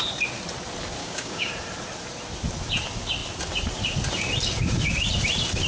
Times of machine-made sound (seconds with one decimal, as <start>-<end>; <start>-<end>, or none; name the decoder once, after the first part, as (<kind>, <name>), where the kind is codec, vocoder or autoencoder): 1.0-1.5 (codec, DAC)